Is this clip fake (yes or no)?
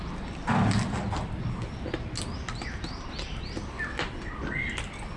no